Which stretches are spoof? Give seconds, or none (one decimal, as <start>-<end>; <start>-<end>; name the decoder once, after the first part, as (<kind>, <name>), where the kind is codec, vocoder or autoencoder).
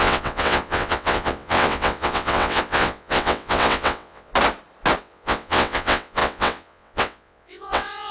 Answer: 0.0-4.3 (vocoder, WaveNeXt); 5.0-8.1